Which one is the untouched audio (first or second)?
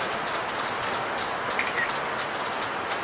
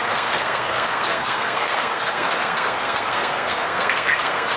first